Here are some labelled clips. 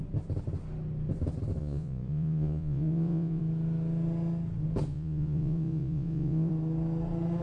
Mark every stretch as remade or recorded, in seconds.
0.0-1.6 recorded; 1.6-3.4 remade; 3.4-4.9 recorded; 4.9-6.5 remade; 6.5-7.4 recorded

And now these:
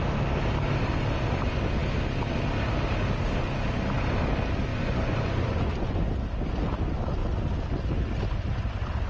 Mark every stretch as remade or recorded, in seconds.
0.0-4.7 recorded; 4.7-6.1 remade; 6.1-9.1 recorded

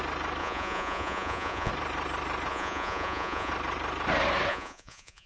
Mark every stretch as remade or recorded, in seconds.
0.0-0.4 recorded; 0.4-1.7 remade; 1.7-2.5 recorded; 2.5-3.5 remade; 3.5-4.5 recorded; 4.5-5.3 remade

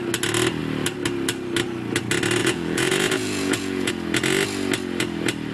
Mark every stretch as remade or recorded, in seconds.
0.0-2.4 recorded; 2.4-3.9 remade; 3.9-5.5 recorded

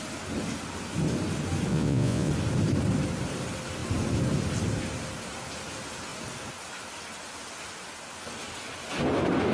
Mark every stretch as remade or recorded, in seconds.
0.0-1.7 recorded; 1.7-2.3 remade; 2.3-9.5 recorded

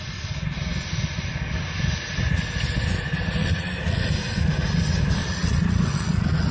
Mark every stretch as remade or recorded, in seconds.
0.0-3.4 recorded; 3.4-4.1 remade; 4.1-5.2 recorded; 5.2-6.5 remade

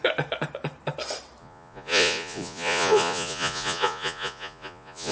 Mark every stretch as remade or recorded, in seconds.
0.0-1.4 recorded; 1.4-5.1 remade

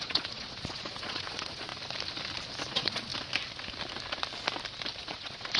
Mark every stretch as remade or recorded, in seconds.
0.0-1.7 remade; 1.7-2.7 recorded; 2.7-3.1 remade; 3.1-5.0 recorded; 5.0-5.6 remade